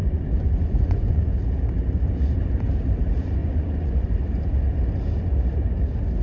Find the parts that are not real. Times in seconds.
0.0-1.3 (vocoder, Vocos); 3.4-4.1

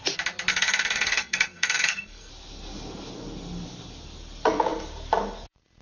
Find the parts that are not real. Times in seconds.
0.5-2.3 (codec, SNAC)

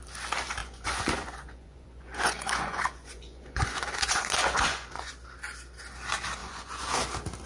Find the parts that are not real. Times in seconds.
0.6-5.1 (vocoder, Vocos); 6.4-6.9

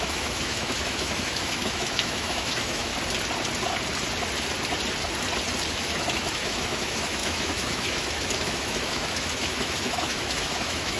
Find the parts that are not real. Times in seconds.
0.0-2.9 (autoencoder, DAC-VAE); 5.7-11.0

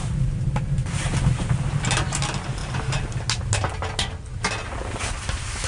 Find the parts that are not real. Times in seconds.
none

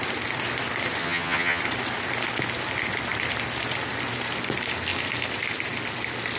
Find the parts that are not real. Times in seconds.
1.0-1.6 (vocoder, HiFi-GAN)

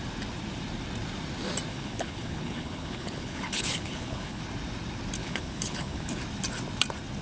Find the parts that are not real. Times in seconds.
1.7-4.4 (codec, HILCodec); 5.2-6.2